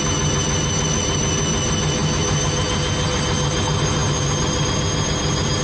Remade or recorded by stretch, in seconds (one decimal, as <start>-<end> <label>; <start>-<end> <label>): 0.0-5.6 recorded

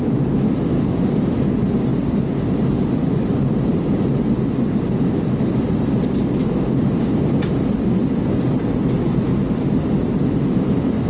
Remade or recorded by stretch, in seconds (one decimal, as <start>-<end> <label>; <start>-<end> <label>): 0.0-11.1 recorded

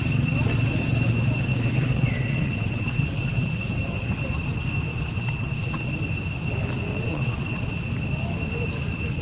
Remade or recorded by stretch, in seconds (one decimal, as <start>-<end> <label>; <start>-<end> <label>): 0.0-1.5 recorded; 1.5-3.6 remade; 3.6-4.9 recorded; 4.9-5.9 remade; 5.9-6.9 recorded; 6.9-7.7 remade; 7.7-9.2 recorded

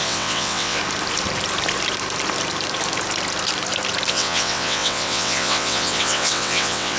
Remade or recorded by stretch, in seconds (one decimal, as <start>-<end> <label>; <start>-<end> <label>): 0.0-0.8 remade; 0.8-4.1 recorded; 4.1-7.0 remade

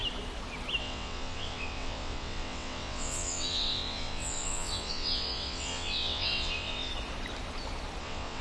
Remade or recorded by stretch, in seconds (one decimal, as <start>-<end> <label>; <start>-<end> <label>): 0.0-0.8 recorded; 0.8-6.9 remade; 6.9-8.0 recorded; 8.0-8.4 remade

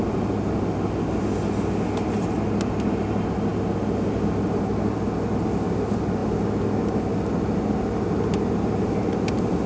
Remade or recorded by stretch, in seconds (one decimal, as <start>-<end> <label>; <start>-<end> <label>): 0.0-9.7 recorded

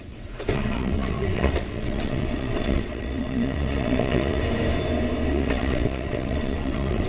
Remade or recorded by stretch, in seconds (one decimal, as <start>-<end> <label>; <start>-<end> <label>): 0.0-4.4 remade; 4.4-5.3 recorded; 5.3-7.1 remade